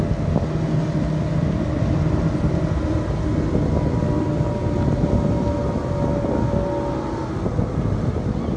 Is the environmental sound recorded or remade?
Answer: recorded